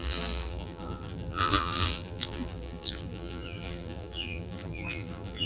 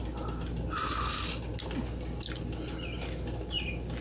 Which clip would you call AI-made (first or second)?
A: first